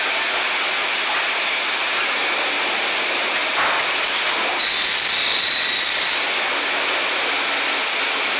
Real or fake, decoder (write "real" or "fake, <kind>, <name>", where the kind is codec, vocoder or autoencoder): real